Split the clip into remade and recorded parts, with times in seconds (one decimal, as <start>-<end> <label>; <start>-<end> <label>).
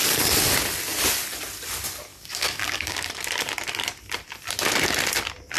0.0-2.1 recorded; 2.1-3.1 remade; 3.1-5.6 recorded